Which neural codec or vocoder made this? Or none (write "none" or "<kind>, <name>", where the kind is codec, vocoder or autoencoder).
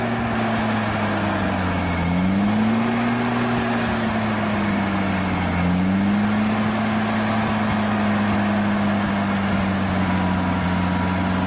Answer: none